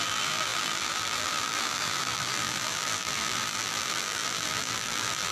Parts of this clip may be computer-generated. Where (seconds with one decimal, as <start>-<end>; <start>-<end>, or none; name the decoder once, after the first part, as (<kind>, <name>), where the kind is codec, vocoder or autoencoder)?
0.0-5.3 (vocoder, BigVGAN v2)